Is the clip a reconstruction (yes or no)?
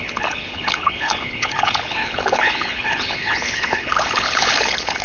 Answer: yes